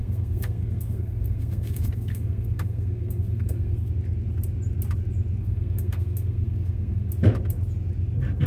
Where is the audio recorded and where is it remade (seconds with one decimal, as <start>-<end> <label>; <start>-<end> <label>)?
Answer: 0.0-3.9 remade; 3.9-5.4 recorded; 5.4-7.1 remade; 7.1-8.5 recorded